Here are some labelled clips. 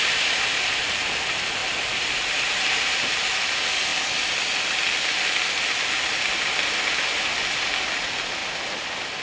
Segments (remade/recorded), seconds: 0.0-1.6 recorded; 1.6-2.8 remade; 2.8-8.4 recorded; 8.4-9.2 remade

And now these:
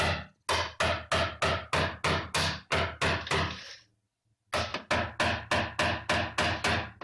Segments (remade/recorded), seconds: 0.0-7.0 recorded

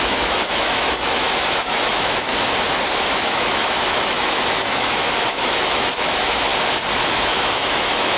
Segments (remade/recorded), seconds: 0.0-2.3 remade; 2.3-3.1 recorded; 3.1-6.5 remade; 6.5-7.1 recorded; 7.1-8.2 remade

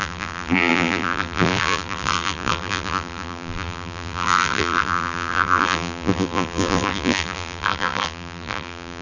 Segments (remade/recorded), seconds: 0.0-9.0 remade

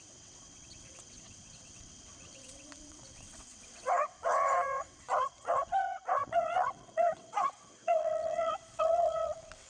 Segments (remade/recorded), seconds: 0.0-9.7 remade

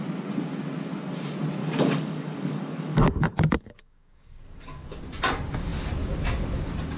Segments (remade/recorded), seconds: 0.0-1.6 recorded; 1.6-5.0 remade; 5.0-7.0 recorded

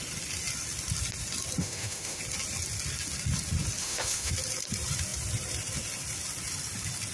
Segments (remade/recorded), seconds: 0.0-1.6 recorded; 1.6-2.2 remade; 2.2-3.8 recorded; 3.8-4.3 remade; 4.3-7.1 recorded

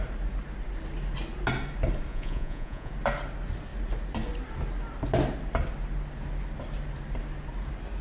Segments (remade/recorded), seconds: 0.0-2.1 recorded; 2.1-2.9 remade; 2.9-8.0 recorded